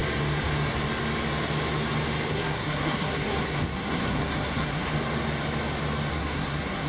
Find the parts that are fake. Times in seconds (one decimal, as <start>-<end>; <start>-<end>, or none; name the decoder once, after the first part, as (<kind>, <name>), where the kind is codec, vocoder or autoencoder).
2.3-4.9 (codec, SNAC); 6.1-6.9